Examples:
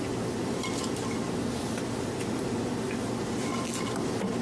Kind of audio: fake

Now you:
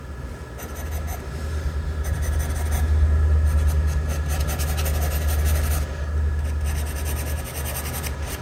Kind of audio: real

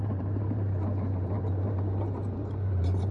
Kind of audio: fake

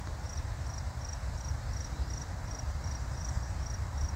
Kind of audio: real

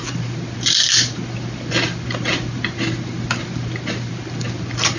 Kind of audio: real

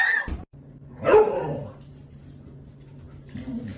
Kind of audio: real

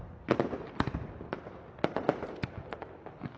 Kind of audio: real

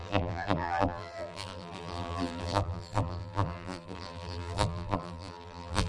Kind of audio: fake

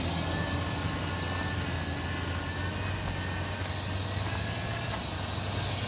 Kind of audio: real